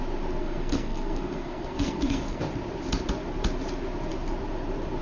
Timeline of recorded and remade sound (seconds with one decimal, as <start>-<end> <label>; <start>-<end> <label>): 0.0-0.4 recorded; 0.4-2.4 remade; 2.4-5.0 recorded